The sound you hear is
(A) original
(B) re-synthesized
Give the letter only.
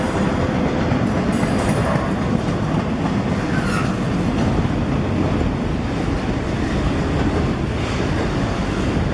A